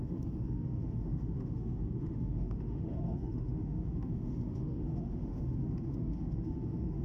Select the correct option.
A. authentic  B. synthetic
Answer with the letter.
B